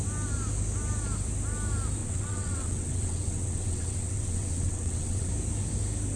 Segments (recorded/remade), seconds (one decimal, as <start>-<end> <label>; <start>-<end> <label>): 0.0-2.0 recorded; 2.0-5.3 remade; 5.3-6.2 recorded